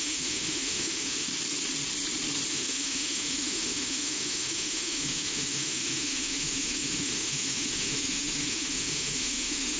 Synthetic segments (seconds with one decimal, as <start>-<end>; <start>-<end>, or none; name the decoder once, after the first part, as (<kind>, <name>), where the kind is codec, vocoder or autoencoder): 0.0-1.3 (autoencoder, DAC-VAE); 2.5-9.8